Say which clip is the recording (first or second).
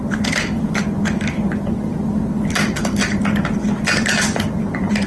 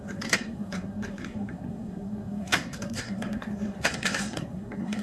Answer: first